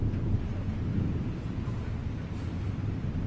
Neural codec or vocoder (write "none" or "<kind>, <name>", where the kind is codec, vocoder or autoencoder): none